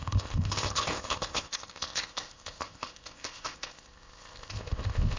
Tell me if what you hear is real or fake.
fake